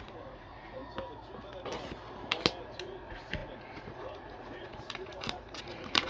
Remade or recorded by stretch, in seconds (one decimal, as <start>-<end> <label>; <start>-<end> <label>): 0.0-0.8 remade; 0.8-2.6 recorded; 2.6-6.1 remade